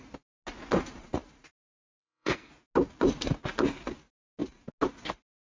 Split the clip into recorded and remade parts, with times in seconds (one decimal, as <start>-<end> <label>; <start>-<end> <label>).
0.0-1.6 recorded; 1.6-2.5 remade; 2.5-5.4 recorded